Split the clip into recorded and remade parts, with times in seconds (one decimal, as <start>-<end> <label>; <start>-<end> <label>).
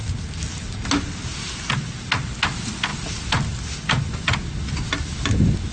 0.0-5.7 recorded